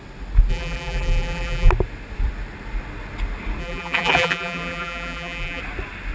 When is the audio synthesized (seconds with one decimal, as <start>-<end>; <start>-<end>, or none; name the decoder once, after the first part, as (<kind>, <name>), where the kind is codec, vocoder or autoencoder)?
0.5-1.7 (vocoder, BigVGAN v2); 3.6-5.6